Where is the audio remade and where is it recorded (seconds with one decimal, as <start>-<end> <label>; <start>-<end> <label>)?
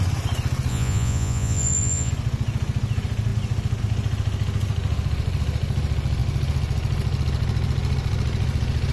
0.0-0.7 recorded; 0.7-2.1 remade; 2.1-8.9 recorded